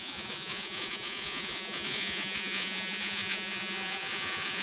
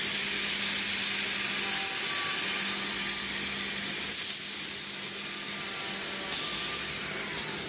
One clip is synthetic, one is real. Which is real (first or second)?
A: second